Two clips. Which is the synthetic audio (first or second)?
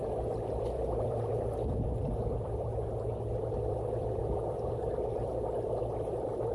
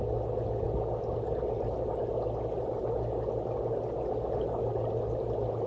first